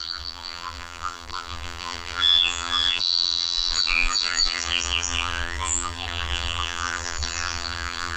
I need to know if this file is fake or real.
fake